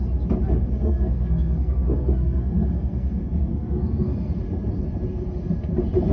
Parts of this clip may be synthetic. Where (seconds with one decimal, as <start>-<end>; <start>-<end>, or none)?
0.6-4.3